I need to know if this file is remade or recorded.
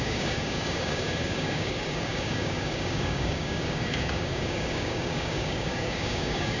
remade